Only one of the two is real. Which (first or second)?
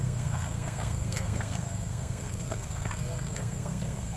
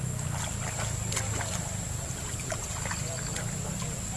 second